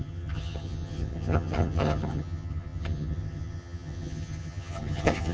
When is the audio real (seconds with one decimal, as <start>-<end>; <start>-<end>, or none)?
none